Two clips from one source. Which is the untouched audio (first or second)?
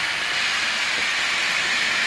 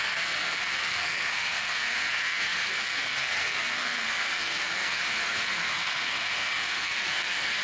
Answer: first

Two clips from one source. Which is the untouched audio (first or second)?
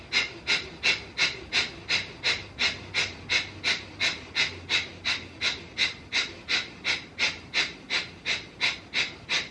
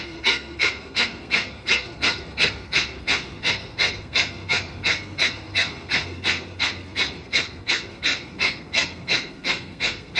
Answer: first